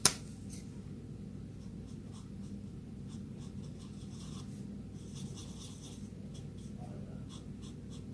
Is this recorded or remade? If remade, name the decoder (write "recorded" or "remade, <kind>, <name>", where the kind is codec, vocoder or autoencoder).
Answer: recorded